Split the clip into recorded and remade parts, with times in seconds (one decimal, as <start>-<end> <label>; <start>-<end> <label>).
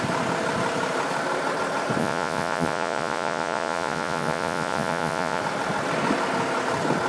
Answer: 0.0-2.0 recorded; 2.0-5.4 remade; 5.4-7.1 recorded